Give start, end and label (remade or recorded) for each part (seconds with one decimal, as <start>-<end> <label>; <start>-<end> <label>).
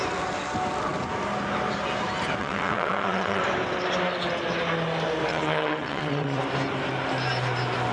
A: 0.0-2.4 recorded; 2.4-3.4 remade; 3.4-5.3 recorded; 5.3-6.4 remade; 6.4-7.9 recorded